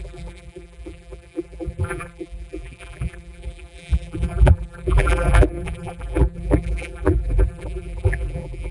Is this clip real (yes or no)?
no